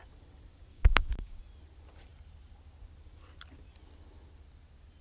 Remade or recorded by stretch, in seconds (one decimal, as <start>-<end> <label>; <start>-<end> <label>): 0.0-0.7 recorded; 0.7-1.4 remade; 1.4-5.0 recorded